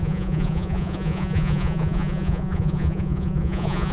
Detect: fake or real fake